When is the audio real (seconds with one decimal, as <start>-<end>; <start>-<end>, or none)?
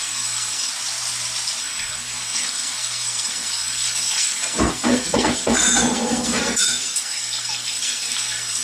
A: 0.7-1.6